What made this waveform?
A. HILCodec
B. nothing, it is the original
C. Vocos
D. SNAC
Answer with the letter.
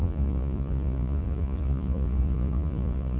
C